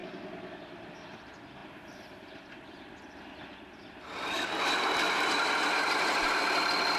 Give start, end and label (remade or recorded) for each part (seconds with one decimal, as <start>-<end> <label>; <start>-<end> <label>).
0.0-7.0 recorded